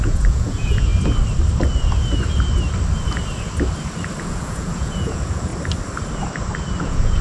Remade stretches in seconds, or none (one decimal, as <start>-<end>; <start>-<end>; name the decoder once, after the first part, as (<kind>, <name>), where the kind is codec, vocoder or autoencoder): 0.0-0.9 (vocoder, Vocos); 4.2-5.5; 6.8-7.2